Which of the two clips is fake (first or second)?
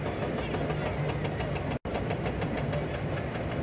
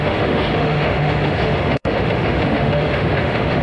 second